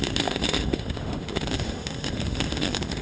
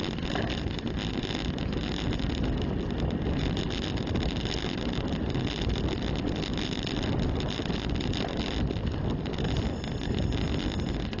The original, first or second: second